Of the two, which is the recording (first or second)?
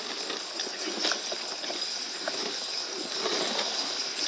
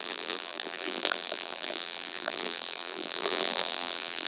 first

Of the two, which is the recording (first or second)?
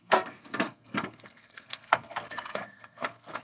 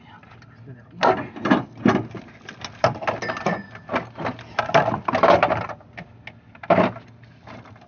second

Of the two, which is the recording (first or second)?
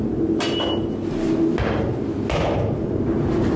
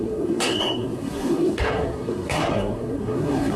first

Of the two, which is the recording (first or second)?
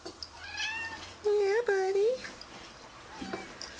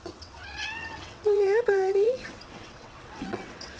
first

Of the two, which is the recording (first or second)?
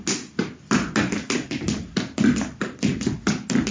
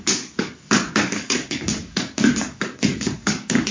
first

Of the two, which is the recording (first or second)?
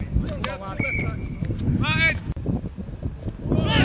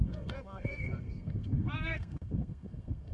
first